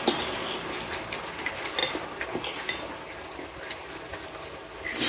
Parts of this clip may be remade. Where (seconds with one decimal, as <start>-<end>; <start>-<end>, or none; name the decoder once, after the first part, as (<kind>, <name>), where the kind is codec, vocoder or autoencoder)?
none